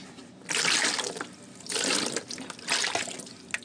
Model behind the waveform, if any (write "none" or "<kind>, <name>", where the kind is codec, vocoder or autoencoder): none